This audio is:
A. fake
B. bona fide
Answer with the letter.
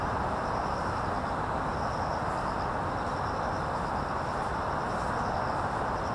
B